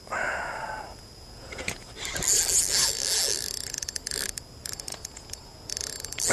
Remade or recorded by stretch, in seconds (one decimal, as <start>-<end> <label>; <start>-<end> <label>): 0.0-0.9 recorded; 0.9-1.9 remade; 1.9-4.9 recorded; 4.9-5.7 remade; 5.7-6.3 recorded